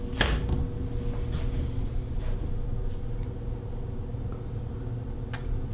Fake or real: real